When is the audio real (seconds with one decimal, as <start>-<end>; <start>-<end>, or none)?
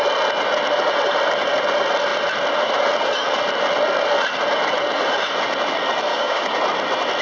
0.0-6.1; 6.6-7.2